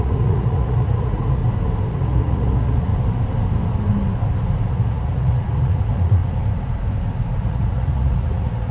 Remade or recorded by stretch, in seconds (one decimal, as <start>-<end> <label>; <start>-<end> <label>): 0.0-1.4 remade; 1.4-1.9 recorded; 1.9-2.9 remade; 2.9-4.7 recorded; 4.7-6.2 remade; 6.2-7.4 recorded; 7.4-8.7 remade